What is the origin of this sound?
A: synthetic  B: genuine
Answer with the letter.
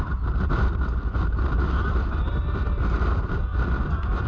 A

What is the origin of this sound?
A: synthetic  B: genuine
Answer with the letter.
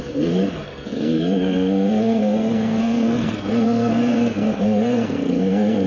A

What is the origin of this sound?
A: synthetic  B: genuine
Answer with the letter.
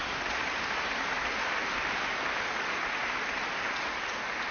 B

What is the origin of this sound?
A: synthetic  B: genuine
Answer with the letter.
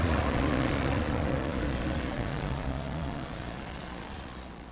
A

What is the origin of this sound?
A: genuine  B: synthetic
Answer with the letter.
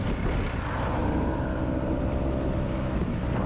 A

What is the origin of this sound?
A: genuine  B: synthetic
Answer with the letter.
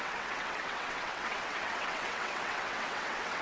B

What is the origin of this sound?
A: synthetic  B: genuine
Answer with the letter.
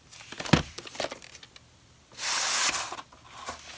B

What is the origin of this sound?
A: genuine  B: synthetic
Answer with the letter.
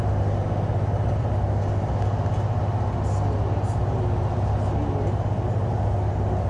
A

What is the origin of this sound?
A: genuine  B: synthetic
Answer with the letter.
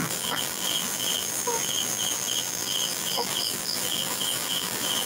B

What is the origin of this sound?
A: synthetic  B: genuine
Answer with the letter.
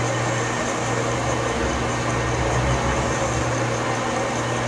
B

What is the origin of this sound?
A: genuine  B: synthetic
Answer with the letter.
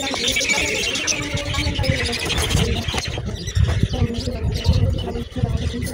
A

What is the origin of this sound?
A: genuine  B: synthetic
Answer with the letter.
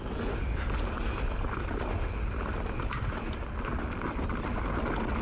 A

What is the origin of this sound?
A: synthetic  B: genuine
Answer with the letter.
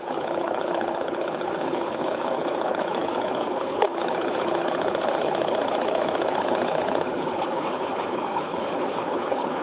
A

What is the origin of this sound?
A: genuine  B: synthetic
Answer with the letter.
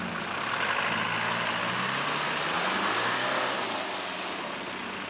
A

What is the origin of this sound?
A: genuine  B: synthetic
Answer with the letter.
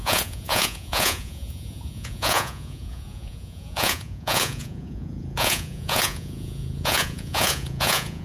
B